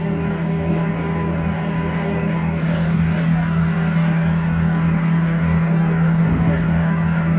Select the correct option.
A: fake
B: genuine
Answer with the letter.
A